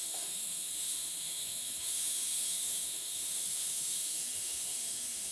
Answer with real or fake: fake